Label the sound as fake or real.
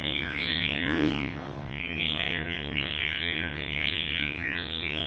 fake